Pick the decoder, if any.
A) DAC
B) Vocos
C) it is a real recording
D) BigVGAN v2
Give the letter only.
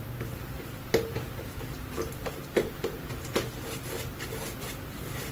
D